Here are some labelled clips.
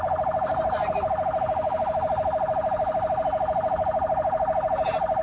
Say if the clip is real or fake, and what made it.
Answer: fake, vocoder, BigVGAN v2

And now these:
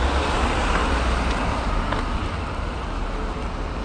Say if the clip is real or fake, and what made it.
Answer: real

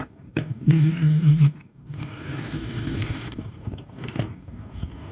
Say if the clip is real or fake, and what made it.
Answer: fake, codec, DAC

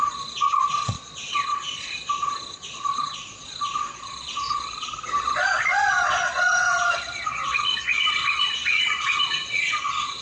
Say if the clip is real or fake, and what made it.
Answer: fake, vocoder, Vocos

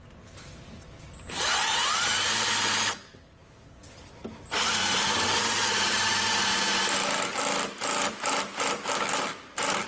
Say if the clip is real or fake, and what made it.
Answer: real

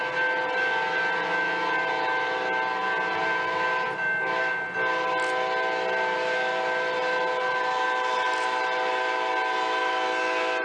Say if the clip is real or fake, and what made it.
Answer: real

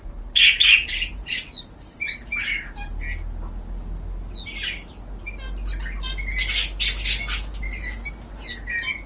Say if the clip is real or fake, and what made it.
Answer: real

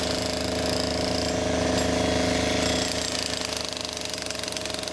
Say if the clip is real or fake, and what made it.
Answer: real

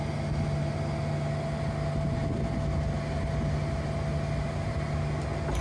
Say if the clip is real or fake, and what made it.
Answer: real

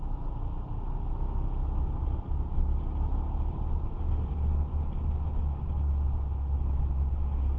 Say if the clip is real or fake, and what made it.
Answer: real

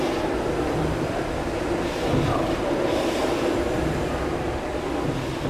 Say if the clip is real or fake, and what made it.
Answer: real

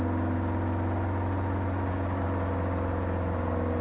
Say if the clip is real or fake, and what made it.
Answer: real